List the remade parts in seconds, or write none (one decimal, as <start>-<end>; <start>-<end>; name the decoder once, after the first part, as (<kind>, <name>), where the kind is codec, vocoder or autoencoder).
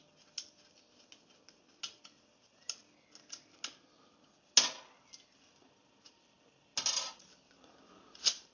none